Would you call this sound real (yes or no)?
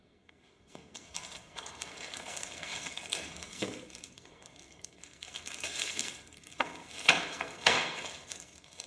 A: no